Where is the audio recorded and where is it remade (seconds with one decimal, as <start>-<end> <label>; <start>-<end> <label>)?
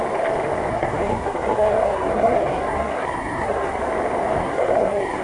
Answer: 0.0-0.7 recorded; 0.7-3.8 remade; 3.8-4.4 recorded; 4.4-5.2 remade